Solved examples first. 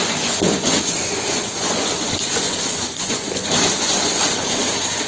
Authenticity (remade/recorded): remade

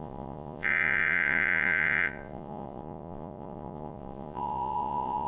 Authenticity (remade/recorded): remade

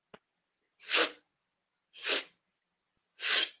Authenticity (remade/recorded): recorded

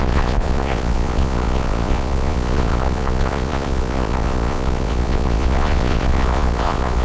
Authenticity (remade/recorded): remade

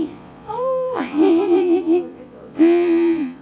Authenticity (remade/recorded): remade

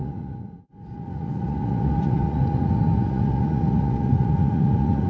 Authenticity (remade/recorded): remade